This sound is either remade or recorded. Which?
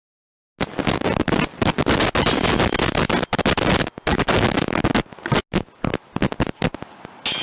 recorded